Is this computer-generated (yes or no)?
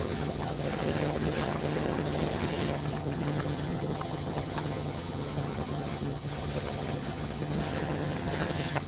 yes